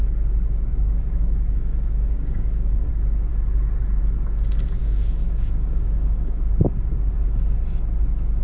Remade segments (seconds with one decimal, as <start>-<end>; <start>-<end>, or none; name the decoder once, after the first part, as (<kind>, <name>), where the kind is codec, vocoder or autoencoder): 0.7-2.9 (codec, DAC); 4.8-6.4